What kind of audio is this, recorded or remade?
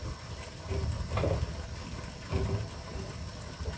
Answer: recorded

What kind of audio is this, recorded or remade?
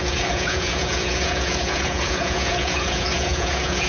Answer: remade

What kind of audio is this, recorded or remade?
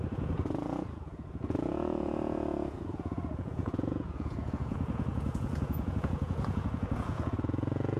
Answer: remade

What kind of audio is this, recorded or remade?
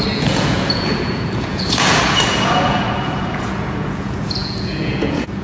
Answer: remade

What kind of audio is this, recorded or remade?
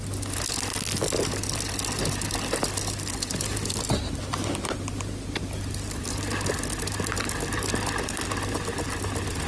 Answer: recorded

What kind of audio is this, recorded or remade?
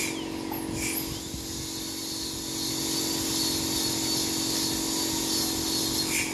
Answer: recorded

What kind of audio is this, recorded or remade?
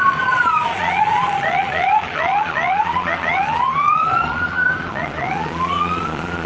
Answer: remade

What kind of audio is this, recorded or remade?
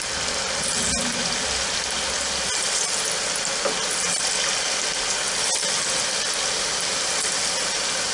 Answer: recorded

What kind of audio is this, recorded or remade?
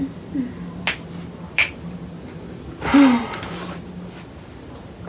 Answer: recorded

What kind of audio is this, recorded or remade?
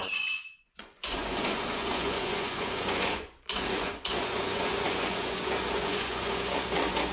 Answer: remade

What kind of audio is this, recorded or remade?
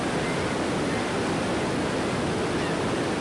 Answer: recorded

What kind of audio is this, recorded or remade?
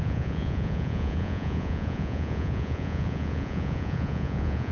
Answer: remade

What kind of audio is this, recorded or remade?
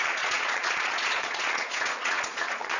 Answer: remade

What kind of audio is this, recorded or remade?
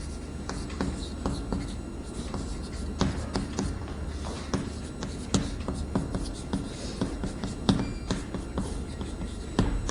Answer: recorded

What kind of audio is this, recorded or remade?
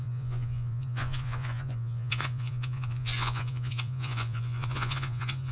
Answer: remade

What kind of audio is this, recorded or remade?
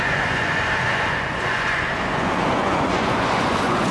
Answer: remade